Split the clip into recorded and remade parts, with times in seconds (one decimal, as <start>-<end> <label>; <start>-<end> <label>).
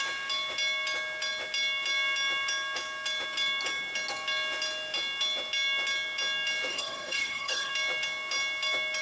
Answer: 0.0-6.7 recorded; 6.7-7.7 remade; 7.7-9.0 recorded